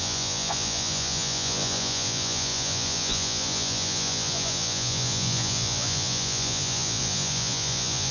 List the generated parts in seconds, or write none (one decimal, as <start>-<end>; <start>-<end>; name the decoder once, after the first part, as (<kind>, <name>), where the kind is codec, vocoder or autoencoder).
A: 0.0-8.1 (vocoder, Vocos)